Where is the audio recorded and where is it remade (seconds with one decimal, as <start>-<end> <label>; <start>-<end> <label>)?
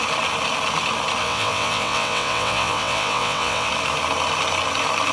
0.0-1.2 recorded; 1.2-3.7 remade; 3.7-5.1 recorded